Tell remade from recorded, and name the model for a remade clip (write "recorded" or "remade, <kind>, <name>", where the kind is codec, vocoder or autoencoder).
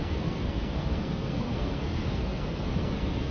remade, codec, SNAC